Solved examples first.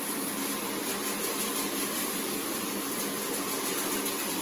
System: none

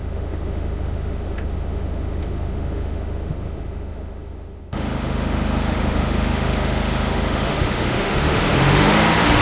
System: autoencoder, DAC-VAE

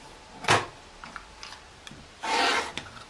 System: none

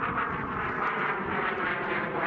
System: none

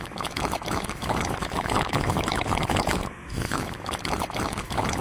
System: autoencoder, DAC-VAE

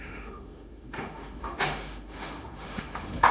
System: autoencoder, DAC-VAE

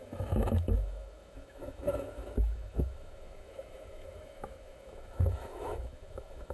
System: autoencoder, DAC-VAE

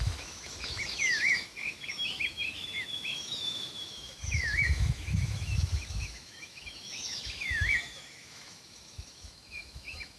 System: autoencoder, DAC-VAE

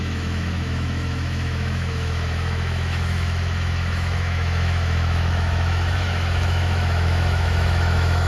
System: autoencoder, DAC-VAE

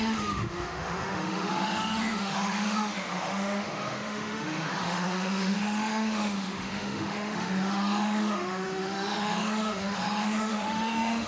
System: autoencoder, DAC-VAE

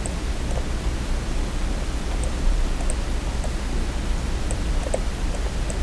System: none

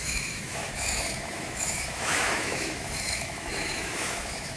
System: autoencoder, DAC-VAE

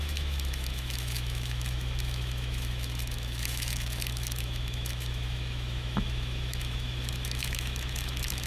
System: autoencoder, DAC-VAE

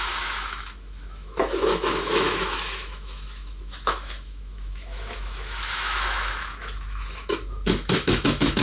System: autoencoder, DAC-VAE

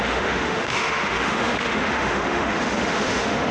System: autoencoder, DAC-VAE